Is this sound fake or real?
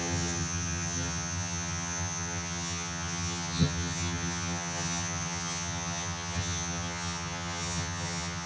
fake